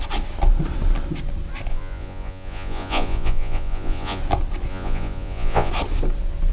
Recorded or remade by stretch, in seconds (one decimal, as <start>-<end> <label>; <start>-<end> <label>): 0.0-1.7 recorded; 1.7-4.2 remade; 4.2-4.7 recorded; 4.7-5.7 remade; 5.7-6.5 recorded